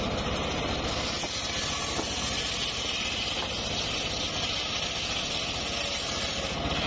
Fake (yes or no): no